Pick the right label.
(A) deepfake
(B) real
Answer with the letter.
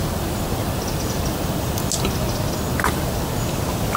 B